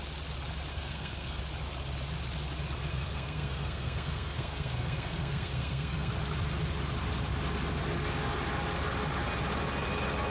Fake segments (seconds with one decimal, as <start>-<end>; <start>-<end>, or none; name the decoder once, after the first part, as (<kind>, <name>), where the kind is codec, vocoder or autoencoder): 0.7-1.4 (codec, SNAC); 2.9-6.1